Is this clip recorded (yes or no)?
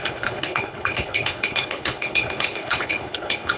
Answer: no